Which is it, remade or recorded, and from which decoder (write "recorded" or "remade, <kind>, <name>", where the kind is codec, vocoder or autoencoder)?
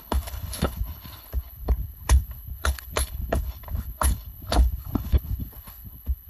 remade, codec, HILCodec